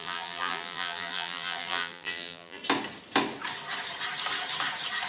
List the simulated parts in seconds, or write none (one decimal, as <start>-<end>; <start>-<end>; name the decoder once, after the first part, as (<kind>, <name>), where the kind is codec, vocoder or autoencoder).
0.0-2.6 (vocoder, BigVGAN v2)